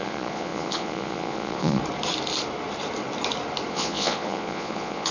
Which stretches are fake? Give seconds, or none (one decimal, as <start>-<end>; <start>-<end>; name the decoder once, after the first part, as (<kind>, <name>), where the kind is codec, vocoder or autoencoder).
0.0-1.8 (vocoder, Vocos); 3.7-5.1